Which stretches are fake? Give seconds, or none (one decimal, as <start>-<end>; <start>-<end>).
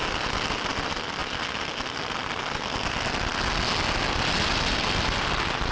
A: none